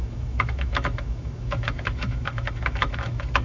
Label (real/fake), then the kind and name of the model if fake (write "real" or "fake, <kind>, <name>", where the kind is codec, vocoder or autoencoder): fake, autoencoder, DAC-VAE